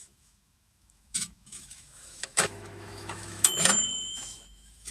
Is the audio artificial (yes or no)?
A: yes